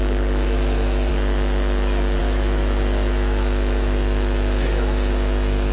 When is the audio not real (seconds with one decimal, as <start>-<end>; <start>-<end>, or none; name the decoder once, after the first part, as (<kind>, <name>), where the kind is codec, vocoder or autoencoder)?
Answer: 0.0-1.1 (autoencoder, DAC-VAE); 2.2-5.7

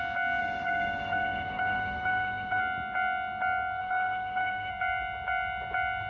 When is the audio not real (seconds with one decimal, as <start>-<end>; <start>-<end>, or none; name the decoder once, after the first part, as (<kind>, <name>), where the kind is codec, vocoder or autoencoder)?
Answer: 0.4-2.6 (autoencoder, DAC-VAE); 3.8-4.7